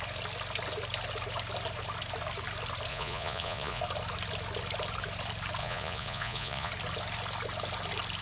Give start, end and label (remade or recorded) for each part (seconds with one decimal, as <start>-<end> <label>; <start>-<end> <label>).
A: 0.0-2.9 recorded; 2.9-3.8 remade; 3.8-5.6 recorded; 5.6-6.7 remade; 6.7-8.2 recorded